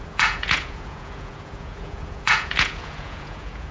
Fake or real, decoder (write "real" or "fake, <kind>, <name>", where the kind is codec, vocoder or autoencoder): fake, vocoder, Vocos